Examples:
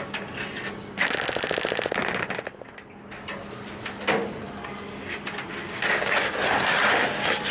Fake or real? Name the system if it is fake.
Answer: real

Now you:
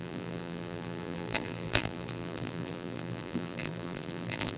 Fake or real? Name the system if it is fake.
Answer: fake, vocoder, BigVGAN v2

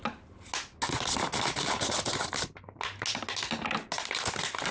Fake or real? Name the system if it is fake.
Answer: real